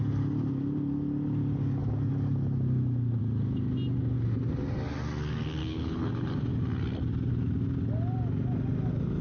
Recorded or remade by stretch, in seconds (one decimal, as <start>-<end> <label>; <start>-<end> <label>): 0.0-5.6 recorded; 5.6-6.1 remade; 6.1-9.2 recorded